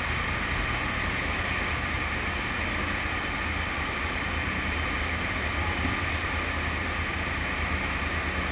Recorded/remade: recorded